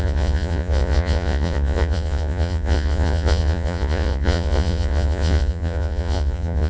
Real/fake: fake